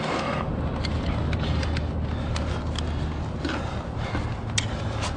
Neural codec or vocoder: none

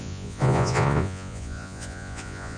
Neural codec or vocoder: vocoder, Vocos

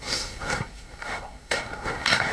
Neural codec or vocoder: codec, SNAC